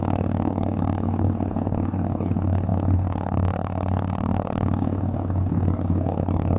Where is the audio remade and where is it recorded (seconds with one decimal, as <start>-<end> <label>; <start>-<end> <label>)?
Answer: 0.0-6.6 remade